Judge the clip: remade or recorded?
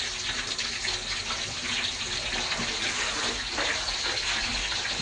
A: recorded